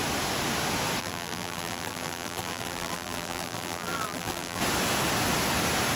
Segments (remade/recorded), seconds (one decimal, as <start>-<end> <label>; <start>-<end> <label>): 0.0-1.0 recorded; 1.0-4.6 remade; 4.6-6.0 recorded